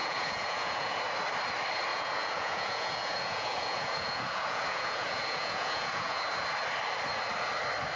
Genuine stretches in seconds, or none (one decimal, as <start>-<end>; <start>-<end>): 1.0-1.9; 6.2-8.0